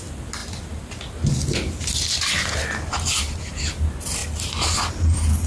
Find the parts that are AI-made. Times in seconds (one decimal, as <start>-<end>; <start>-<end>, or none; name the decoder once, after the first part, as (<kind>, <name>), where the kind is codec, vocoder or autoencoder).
none